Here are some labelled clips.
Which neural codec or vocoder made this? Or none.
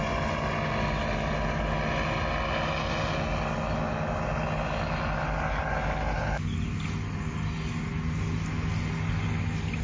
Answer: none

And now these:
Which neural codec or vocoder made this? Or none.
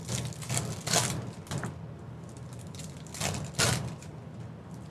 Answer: none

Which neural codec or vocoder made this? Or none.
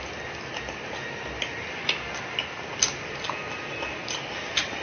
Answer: none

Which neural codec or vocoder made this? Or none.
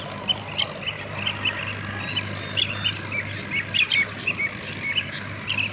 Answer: none